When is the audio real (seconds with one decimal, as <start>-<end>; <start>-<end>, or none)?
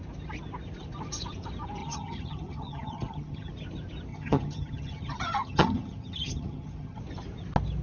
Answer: 0.0-1.8; 3.5-4.1; 7.0-7.8